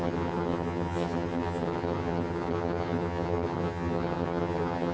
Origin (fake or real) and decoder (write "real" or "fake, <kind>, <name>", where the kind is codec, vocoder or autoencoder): fake, vocoder, HiFi-GAN